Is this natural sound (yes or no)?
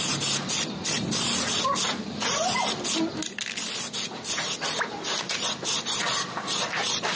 yes